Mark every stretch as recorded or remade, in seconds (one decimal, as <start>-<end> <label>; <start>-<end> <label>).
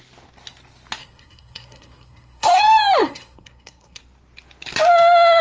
0.0-1.0 recorded; 1.0-2.6 remade; 2.6-3.0 recorded; 3.0-4.0 remade; 4.0-5.4 recorded